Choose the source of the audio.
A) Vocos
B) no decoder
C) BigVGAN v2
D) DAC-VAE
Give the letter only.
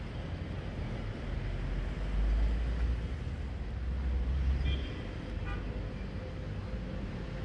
B